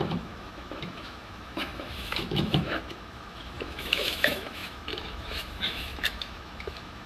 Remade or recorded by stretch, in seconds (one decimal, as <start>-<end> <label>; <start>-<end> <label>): 0.0-7.1 remade